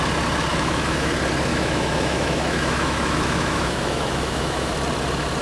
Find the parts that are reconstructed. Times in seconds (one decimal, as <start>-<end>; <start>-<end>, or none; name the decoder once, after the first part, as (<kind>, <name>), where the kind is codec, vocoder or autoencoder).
0.5-1.1 (autoencoder, DAC-VAE); 1.5-4.7